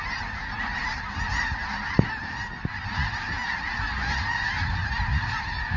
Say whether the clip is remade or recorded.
recorded